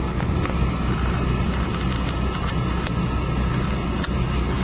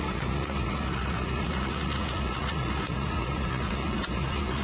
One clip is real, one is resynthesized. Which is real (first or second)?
first